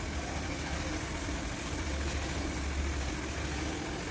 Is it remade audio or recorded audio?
recorded